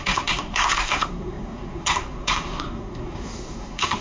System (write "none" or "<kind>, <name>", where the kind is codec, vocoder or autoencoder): codec, SNAC